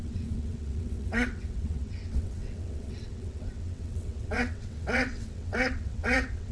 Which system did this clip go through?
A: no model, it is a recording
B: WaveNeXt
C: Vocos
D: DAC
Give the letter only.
B